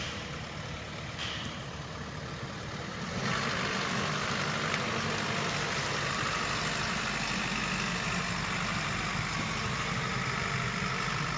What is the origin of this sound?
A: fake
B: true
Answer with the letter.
B